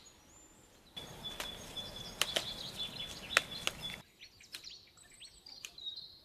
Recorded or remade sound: recorded